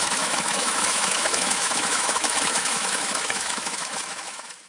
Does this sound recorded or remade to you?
remade